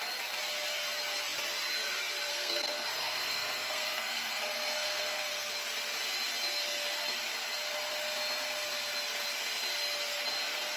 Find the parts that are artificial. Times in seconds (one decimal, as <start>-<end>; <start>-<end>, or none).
2.3-5.5